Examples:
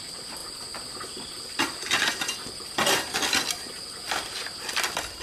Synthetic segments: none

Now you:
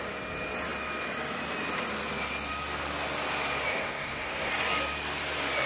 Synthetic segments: 3.7-4.5 (codec, SNAC)

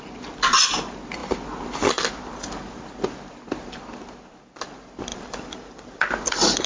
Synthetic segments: 5.1-6.7 (vocoder, BigVGAN v2)

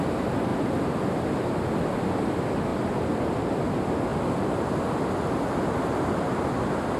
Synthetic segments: 0.5-1.8 (vocoder, BigVGAN v2); 2.7-3.6

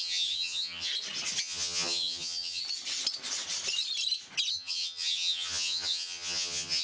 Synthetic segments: 0.0-0.9 (vocoder, HiFi-GAN); 1.4-2.6; 4.5-6.8

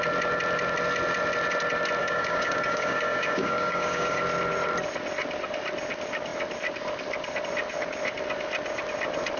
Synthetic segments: 2.0-4.2 (codec, DAC)